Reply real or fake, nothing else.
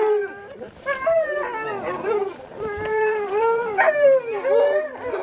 fake